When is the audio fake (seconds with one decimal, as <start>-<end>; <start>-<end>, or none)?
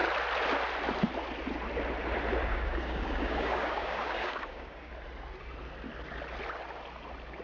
2.5-4.9